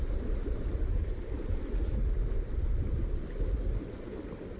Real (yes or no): yes